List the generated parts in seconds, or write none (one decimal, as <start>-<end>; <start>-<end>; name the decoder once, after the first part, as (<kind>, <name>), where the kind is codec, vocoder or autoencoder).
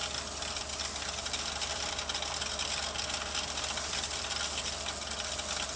none